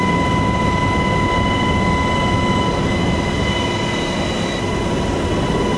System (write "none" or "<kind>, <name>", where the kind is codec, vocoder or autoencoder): none